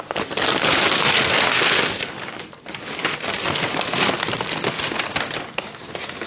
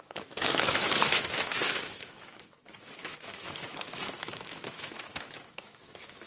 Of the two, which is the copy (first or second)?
second